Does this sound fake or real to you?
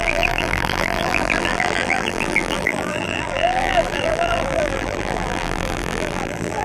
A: fake